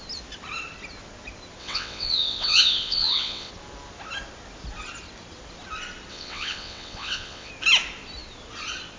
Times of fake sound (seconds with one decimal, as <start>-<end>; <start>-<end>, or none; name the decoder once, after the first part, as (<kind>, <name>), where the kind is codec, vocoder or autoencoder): 1.6-3.5 (vocoder, WaveNeXt); 6.1-7.5